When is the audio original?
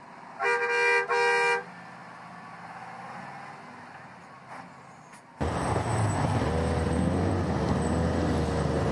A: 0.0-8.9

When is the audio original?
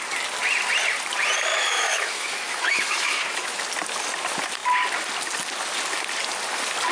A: 0.0-1.5; 3.6-6.9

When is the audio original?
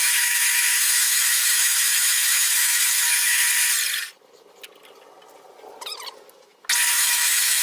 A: 3.4-6.9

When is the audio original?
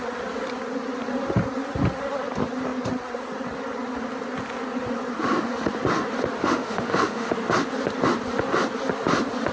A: 0.0-6.4; 7.3-9.5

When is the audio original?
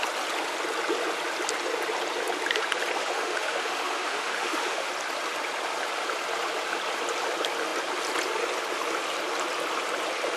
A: 0.0-3.0; 4.9-10.4